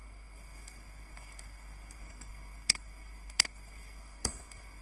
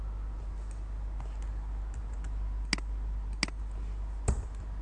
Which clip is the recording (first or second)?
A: second